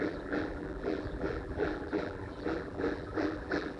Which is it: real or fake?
fake